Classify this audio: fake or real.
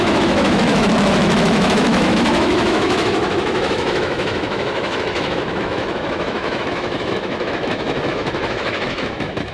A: fake